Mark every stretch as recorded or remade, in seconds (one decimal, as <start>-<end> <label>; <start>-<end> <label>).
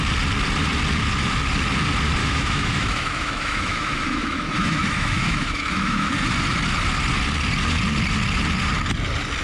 0.0-2.2 recorded; 2.2-6.1 remade; 6.1-9.4 recorded